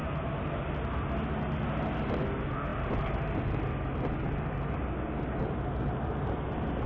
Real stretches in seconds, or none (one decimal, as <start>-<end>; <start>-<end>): 0.0-6.9